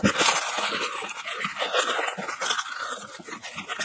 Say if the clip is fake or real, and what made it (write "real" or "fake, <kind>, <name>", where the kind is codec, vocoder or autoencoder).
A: real